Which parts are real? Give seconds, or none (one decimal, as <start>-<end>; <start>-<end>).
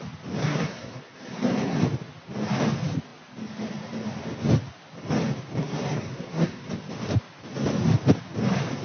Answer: 0.0-0.4; 1.8-5.6; 6.7-8.8